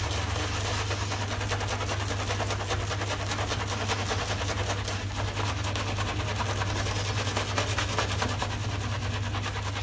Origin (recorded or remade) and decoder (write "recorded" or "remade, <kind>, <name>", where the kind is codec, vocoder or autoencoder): recorded